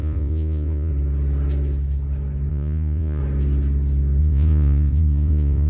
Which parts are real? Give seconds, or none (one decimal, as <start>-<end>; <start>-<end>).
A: 0.9-2.5; 3.2-4.2